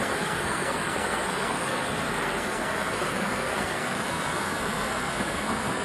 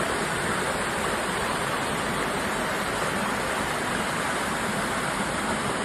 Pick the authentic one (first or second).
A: second